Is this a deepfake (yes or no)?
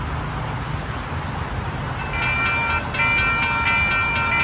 no